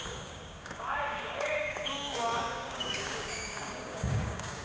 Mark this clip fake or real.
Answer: fake